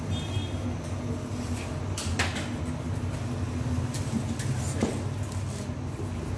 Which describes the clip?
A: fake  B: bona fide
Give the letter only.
B